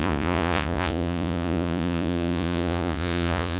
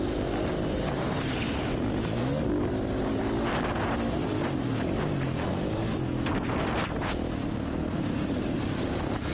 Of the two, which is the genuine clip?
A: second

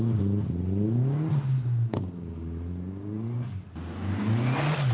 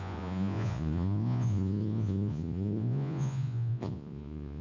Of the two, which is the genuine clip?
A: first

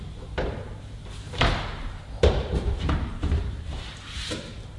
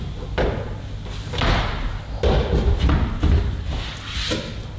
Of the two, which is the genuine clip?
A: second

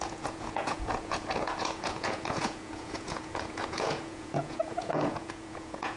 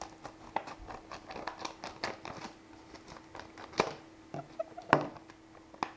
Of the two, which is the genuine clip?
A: second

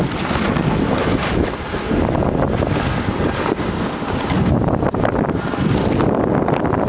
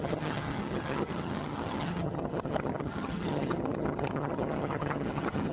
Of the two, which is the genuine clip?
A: first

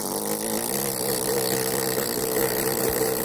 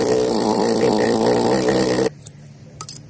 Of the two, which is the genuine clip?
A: first